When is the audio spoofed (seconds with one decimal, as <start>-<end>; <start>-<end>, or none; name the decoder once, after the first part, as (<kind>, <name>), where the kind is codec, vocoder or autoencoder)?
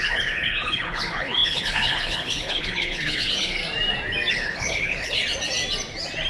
0.0-3.6 (codec, HILCodec); 4.3-5.2